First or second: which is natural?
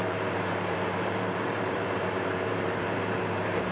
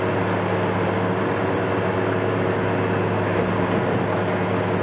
second